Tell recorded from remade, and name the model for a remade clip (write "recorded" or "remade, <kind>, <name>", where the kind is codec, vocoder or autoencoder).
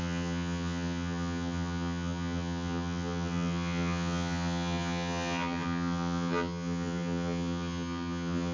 remade, vocoder, HiFi-GAN